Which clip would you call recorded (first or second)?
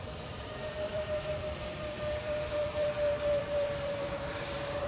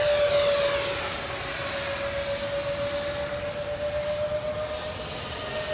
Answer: second